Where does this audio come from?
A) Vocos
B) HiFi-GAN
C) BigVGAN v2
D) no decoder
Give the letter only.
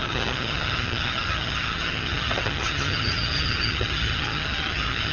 B